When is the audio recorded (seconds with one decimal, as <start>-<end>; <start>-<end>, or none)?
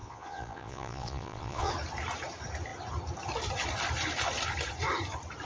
1.7-5.5